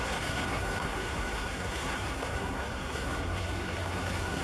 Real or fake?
fake